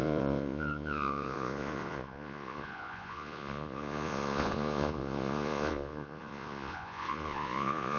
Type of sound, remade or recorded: remade